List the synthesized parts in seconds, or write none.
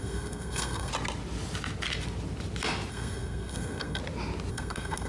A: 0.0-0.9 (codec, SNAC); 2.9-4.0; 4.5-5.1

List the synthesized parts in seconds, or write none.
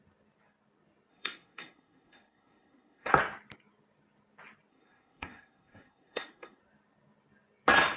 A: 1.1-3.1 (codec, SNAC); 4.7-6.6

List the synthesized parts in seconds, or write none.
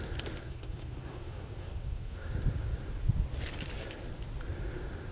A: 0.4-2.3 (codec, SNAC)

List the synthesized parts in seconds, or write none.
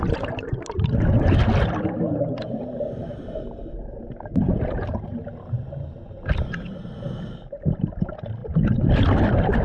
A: none